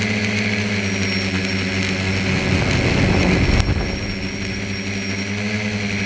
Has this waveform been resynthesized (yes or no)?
no